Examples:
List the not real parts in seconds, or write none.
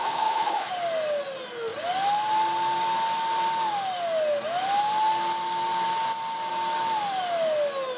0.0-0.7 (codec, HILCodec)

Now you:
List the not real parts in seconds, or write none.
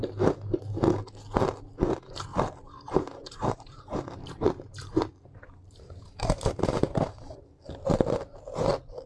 2.3-7.5 (vocoder, BigVGAN v2)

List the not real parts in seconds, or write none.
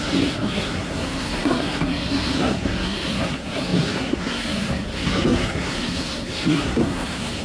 0.0-7.4 (codec, SNAC)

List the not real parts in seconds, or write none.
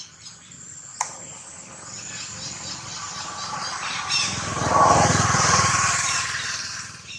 0.9-1.7 (vocoder, BigVGAN v2)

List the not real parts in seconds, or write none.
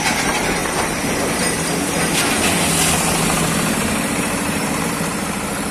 0.0-0.6 (vocoder, BigVGAN v2); 4.0-5.7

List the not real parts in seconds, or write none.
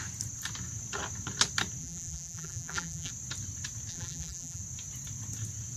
1.8-3.1 (vocoder, BigVGAN v2); 3.9-4.6